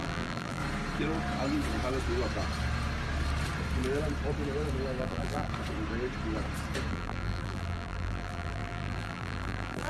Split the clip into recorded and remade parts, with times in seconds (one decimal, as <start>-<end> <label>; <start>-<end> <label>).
0.0-0.6 remade; 0.6-5.0 recorded; 5.0-5.5 remade; 5.5-6.9 recorded; 6.9-9.9 remade